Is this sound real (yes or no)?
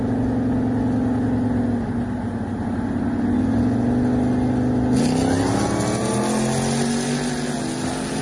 yes